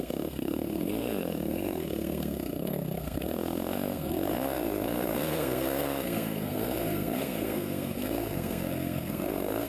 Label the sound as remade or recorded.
remade